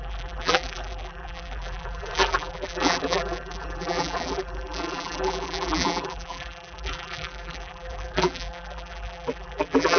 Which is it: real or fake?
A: fake